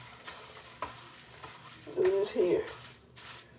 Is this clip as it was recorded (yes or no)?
yes